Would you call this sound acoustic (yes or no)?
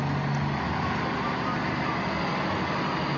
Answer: yes